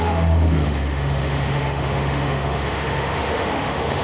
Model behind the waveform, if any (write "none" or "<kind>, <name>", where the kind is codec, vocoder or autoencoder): autoencoder, DAC-VAE